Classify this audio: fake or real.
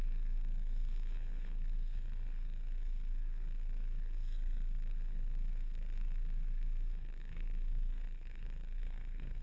fake